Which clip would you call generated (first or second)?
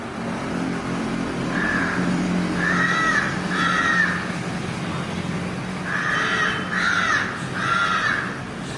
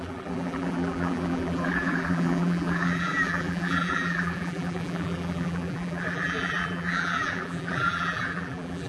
second